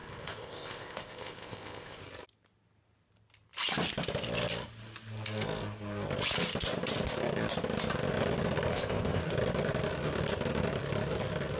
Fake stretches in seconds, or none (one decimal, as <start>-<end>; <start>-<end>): 0.0-2.0; 8.7-9.2